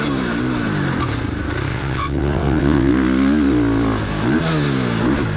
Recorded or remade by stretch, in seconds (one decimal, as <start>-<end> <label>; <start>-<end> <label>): 0.0-1.7 recorded; 1.7-2.9 remade; 2.9-5.4 recorded